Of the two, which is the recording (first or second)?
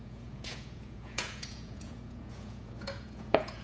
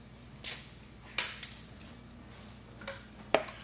second